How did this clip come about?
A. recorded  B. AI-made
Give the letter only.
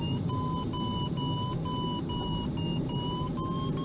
A